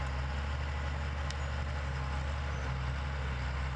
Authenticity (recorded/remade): recorded